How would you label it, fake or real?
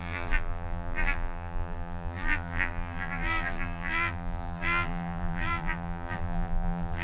fake